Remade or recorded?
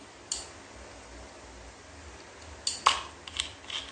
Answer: recorded